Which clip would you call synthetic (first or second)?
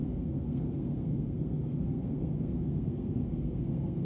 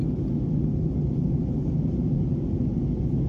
first